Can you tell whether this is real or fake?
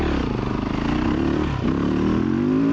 real